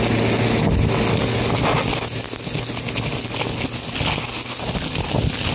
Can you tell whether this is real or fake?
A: real